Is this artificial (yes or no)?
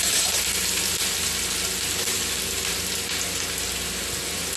no